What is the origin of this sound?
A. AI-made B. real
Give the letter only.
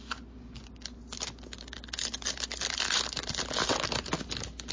B